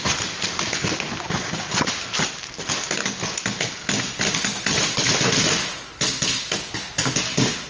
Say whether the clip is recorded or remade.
recorded